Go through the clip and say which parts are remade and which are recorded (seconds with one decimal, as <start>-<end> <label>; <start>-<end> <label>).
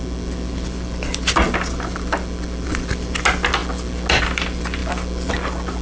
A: 0.0-5.8 recorded